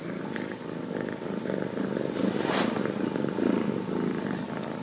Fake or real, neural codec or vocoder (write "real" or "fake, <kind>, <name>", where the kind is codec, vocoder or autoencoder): real